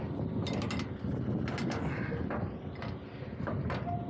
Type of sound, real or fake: real